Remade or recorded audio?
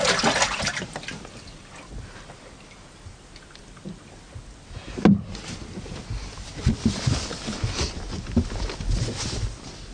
recorded